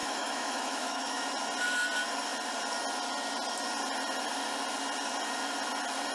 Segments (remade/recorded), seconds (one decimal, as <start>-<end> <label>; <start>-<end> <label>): 0.0-1.2 remade; 1.2-6.1 recorded